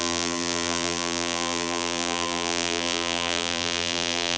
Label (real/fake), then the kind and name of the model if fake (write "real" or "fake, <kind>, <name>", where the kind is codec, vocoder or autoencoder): fake, vocoder, BigVGAN v2